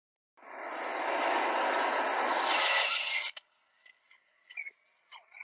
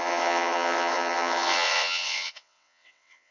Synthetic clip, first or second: second